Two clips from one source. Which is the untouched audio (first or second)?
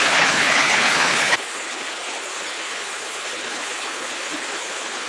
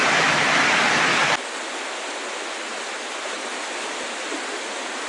second